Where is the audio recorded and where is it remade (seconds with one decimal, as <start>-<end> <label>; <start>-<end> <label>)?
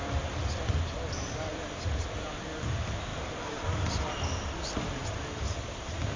0.0-1.5 recorded; 1.5-2.4 remade; 2.4-3.1 recorded; 3.1-3.6 remade; 3.6-5.0 recorded; 5.0-6.2 remade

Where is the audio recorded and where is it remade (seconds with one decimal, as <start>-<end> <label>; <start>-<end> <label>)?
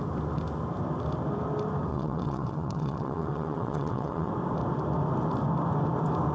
0.0-1.9 recorded; 1.9-4.3 remade; 4.3-6.3 recorded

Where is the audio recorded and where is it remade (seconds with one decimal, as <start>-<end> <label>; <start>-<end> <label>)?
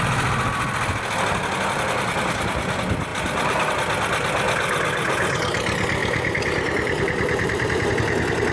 0.0-3.1 recorded; 3.1-3.7 remade; 3.7-6.0 recorded; 6.0-7.9 remade; 7.9-8.5 recorded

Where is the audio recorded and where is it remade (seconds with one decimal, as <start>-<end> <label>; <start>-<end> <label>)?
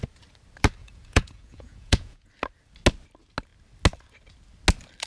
0.0-0.8 recorded; 0.8-2.3 remade; 2.3-5.1 recorded